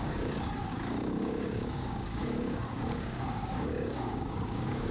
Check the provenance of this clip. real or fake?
fake